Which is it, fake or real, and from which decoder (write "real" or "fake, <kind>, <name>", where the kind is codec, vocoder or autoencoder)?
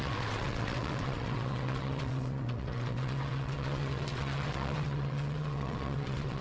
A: fake, vocoder, WaveNeXt